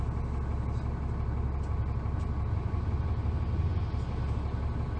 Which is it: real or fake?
real